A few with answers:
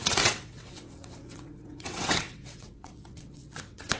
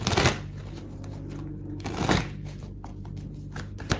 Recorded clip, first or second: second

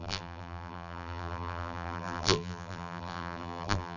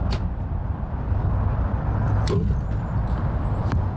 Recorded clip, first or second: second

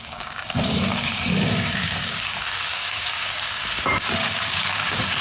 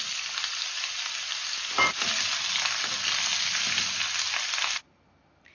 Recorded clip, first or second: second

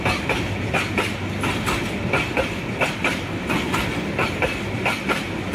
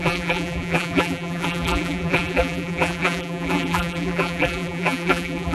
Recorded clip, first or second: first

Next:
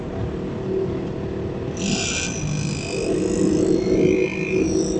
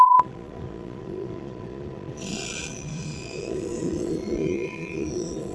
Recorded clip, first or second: first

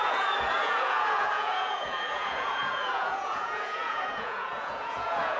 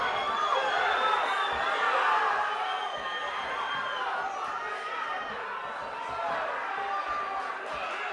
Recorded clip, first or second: second